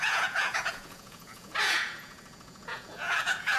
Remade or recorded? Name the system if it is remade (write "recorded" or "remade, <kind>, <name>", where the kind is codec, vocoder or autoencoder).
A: remade, vocoder, Vocos